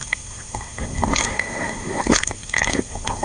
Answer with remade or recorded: remade